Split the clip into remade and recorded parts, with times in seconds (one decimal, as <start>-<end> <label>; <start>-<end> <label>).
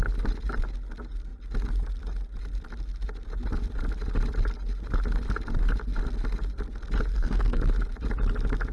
0.0-7.1 recorded; 7.1-7.6 remade; 7.6-8.7 recorded